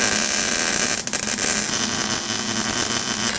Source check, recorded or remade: recorded